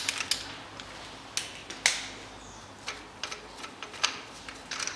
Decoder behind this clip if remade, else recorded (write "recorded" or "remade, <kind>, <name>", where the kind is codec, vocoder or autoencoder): recorded